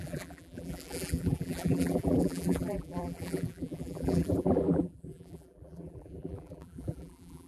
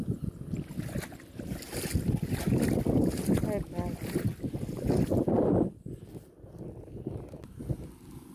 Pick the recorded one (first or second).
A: second